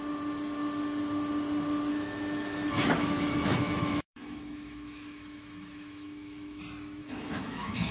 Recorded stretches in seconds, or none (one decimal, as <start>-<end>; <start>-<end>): 0.0-1.9; 6.6-7.0

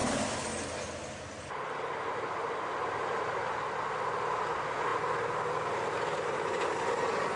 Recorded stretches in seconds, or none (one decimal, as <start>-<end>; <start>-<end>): 0.0-7.4